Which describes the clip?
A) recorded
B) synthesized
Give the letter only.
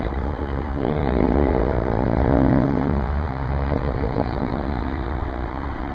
B